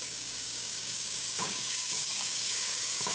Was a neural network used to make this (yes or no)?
yes